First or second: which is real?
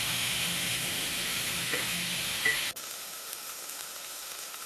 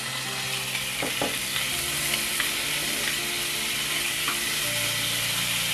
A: second